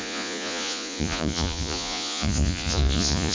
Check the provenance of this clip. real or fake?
fake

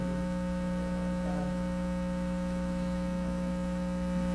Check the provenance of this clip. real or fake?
fake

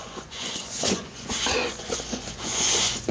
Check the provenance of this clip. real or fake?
fake